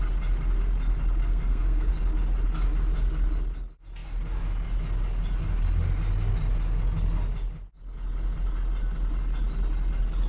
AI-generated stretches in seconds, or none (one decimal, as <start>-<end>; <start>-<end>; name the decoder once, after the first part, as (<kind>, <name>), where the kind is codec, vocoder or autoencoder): 1.2-1.9 (codec, SNAC)